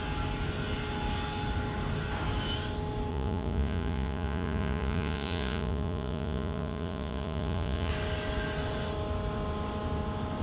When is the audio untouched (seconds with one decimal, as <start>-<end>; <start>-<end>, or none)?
0.0-3.1; 7.9-10.4